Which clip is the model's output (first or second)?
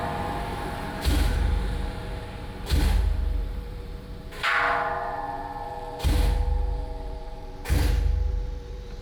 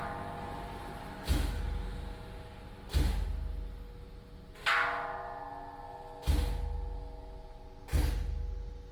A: first